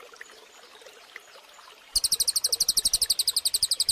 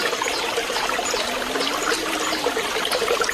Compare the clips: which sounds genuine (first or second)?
first